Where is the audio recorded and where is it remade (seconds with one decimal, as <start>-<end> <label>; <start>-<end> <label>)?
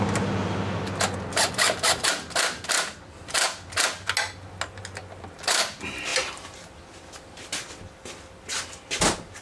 0.0-9.4 recorded